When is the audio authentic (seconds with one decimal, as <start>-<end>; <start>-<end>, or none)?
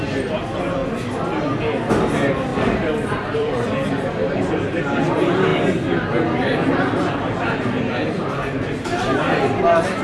0.0-2.5; 4.1-5.5; 7.8-10.0